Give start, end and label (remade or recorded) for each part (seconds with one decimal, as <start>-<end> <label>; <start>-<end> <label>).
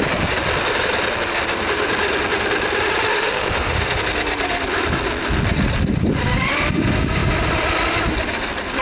0.0-3.1 recorded; 3.1-4.0 remade; 4.0-8.8 recorded